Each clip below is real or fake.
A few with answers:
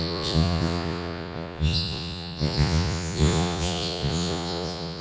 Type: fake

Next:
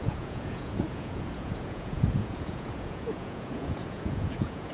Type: fake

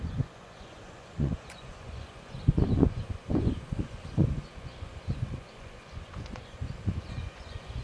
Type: fake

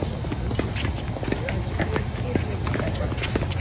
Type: real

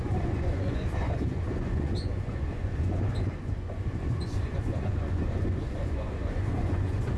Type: fake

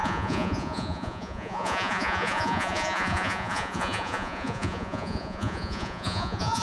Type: fake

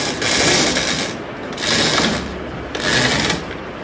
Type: real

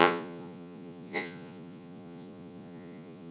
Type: fake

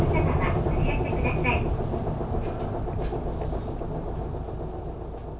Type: real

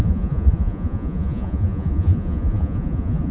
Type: fake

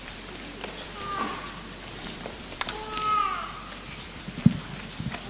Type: real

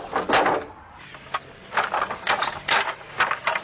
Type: real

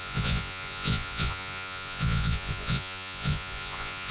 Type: fake